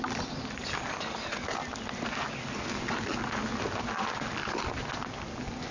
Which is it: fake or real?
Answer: real